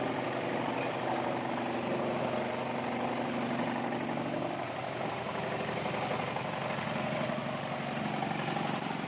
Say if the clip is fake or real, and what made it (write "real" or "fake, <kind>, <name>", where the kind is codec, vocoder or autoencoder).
real